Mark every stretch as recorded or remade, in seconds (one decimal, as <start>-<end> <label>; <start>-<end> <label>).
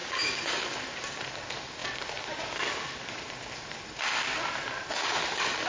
0.0-0.5 remade; 0.5-5.7 recorded